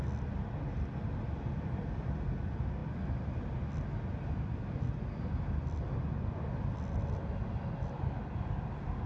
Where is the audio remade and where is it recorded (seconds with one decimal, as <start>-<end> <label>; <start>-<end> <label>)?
0.0-9.1 recorded